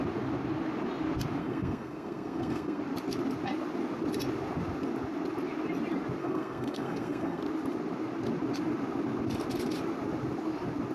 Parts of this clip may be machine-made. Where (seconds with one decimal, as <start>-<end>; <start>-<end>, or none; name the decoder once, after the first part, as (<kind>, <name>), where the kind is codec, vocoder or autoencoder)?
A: 1.4-2.8 (codec, SNAC); 6.2-7.4